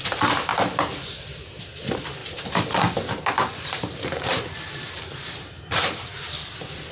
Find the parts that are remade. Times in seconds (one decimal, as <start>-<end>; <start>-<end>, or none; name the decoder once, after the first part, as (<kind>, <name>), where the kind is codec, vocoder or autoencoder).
0.5-1.0 (vocoder, BigVGAN v2); 2.2-6.3